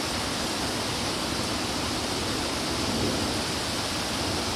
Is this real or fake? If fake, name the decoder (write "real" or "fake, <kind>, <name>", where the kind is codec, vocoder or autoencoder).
real